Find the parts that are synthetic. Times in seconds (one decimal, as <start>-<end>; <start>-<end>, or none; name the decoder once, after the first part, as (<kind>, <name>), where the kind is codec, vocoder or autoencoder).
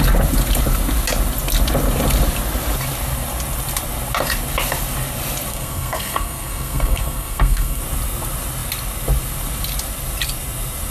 5.5-7.8 (codec, SNAC)